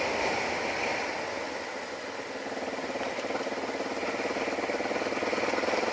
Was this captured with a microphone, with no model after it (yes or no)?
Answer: yes